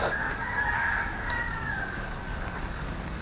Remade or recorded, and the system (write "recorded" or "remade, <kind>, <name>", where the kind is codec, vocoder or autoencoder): remade, codec, DAC